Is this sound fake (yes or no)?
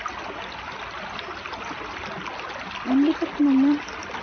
no